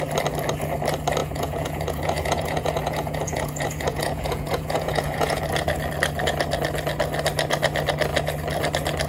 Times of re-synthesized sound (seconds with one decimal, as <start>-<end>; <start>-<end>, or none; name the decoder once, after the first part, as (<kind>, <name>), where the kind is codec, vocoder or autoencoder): 1.2-5.4 (vocoder, Vocos)